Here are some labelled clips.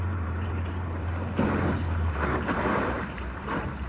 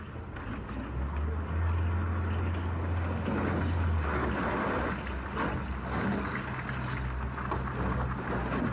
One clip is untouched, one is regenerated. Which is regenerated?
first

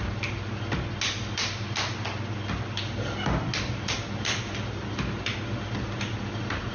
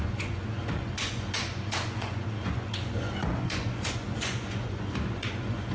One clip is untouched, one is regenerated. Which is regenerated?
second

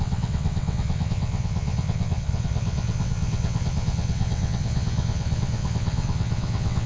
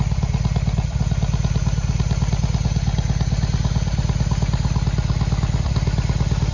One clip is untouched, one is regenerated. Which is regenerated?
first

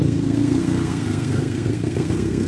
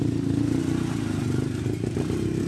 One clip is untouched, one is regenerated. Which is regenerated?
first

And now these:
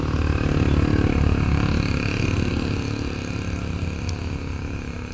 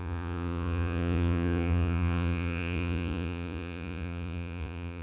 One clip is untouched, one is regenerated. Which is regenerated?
second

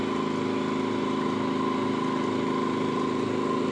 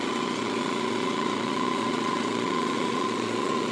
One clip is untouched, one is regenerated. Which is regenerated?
second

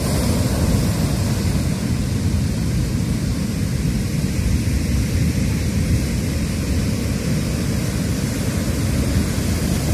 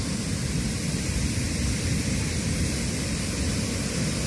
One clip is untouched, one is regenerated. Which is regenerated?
second